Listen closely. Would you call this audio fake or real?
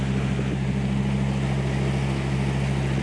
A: real